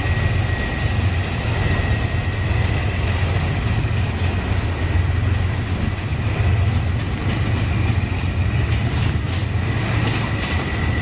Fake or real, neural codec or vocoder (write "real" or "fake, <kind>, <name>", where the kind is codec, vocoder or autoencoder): real